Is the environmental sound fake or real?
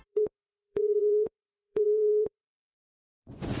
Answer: fake